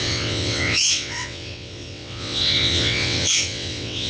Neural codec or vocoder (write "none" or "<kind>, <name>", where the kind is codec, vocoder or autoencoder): vocoder, WaveNeXt